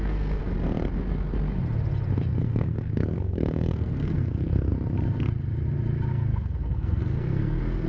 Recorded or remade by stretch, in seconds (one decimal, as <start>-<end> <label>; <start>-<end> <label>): 0.0-0.4 remade; 0.4-2.3 recorded; 2.3-4.7 remade; 4.7-6.1 recorded; 6.1-7.9 remade